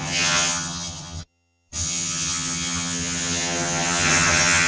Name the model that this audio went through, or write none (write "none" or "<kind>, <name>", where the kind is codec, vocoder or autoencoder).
vocoder, HiFi-GAN